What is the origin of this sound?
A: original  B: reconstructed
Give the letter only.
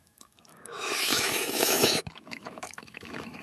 B